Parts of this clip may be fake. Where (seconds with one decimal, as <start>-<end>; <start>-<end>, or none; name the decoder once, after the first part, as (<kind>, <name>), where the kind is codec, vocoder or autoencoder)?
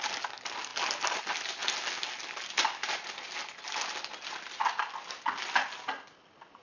none